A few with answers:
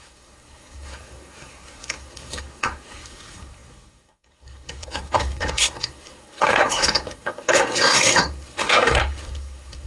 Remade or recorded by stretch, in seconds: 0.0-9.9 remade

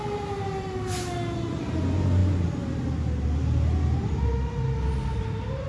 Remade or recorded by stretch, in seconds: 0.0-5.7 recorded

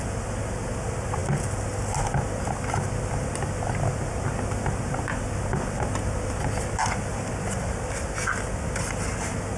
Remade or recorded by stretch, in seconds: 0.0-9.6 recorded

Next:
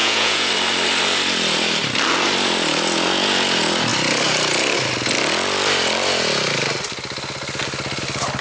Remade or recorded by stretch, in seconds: 0.0-0.5 remade; 0.5-8.4 recorded

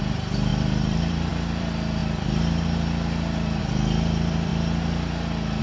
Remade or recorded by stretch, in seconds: 0.0-4.5 remade; 4.5-5.6 recorded

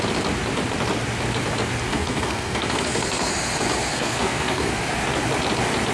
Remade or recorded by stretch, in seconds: 0.0-1.9 recorded; 1.9-3.3 remade; 3.3-3.9 recorded; 3.9-4.7 remade; 4.7-5.9 recorded